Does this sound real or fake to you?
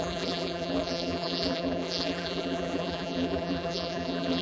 fake